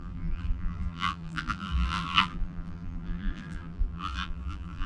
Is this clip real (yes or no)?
no